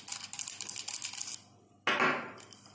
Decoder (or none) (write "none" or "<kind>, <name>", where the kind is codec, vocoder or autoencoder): none